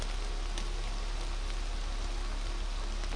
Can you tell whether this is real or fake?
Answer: real